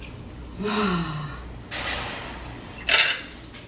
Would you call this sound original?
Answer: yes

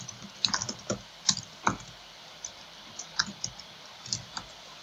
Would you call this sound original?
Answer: no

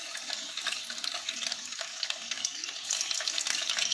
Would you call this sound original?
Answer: no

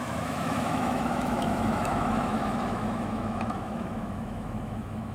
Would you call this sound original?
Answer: no